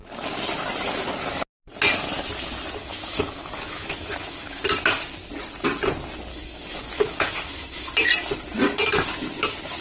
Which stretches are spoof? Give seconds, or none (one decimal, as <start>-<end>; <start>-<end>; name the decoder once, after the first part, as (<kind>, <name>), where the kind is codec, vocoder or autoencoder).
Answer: 2.8-4.6 (autoencoder, DAC-VAE); 6.3-7.9